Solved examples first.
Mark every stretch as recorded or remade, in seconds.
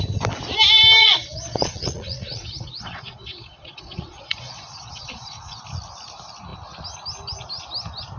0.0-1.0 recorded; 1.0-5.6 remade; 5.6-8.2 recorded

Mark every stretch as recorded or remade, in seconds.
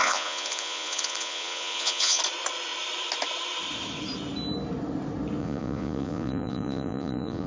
0.0-2.2 remade; 2.2-5.4 recorded; 5.4-7.5 remade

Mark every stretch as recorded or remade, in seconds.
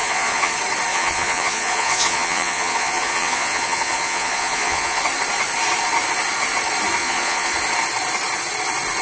0.0-0.5 remade; 0.5-0.9 recorded; 0.9-5.0 remade; 5.0-7.0 recorded; 7.0-7.5 remade; 7.5-9.0 recorded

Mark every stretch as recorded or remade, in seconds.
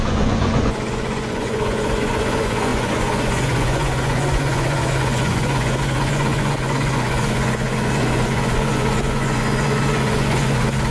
0.0-10.9 remade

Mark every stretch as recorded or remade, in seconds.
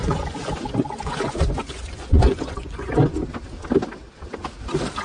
0.0-3.0 remade; 3.0-5.0 recorded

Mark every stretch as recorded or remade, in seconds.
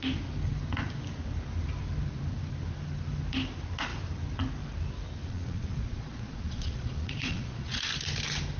0.0-5.2 recorded; 5.2-7.8 remade; 7.8-8.6 recorded